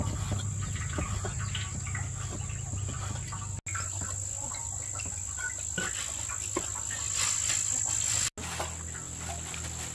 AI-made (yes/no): no